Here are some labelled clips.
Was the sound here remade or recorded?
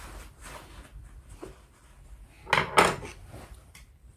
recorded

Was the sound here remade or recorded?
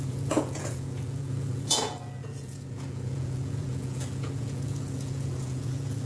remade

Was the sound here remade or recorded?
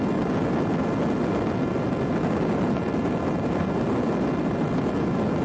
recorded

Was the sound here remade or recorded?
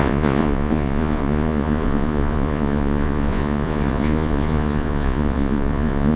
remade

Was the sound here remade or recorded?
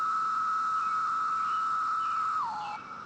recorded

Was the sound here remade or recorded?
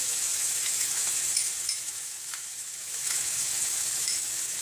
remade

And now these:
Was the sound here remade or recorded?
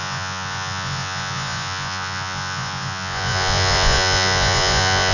remade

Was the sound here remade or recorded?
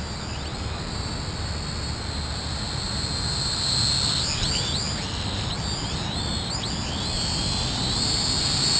recorded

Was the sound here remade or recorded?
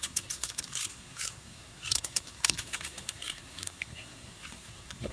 remade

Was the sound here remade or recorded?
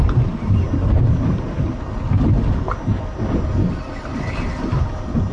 recorded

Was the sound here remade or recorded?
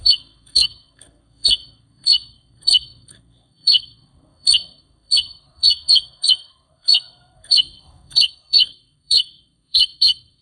remade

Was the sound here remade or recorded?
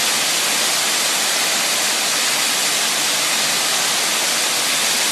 recorded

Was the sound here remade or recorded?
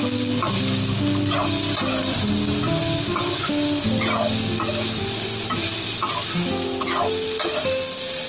recorded